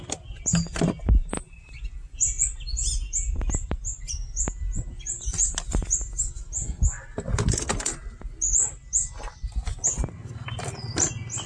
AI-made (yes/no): no